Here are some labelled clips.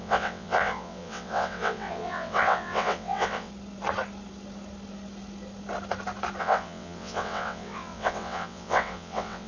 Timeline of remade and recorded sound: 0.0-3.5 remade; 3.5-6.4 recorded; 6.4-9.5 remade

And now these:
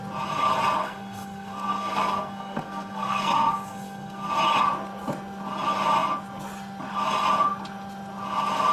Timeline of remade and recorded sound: 0.0-0.8 recorded; 0.8-4.3 remade; 4.3-8.7 recorded